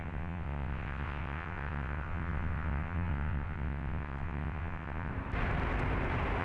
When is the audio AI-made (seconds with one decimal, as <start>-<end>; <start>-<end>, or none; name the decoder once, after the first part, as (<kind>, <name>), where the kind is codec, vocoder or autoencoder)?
0.0-5.1 (vocoder, WaveNeXt)